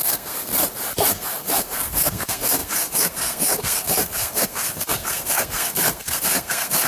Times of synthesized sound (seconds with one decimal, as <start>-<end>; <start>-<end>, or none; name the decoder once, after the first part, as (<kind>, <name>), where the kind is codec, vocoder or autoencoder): 0.0-0.5 (codec, SNAC); 1.1-6.9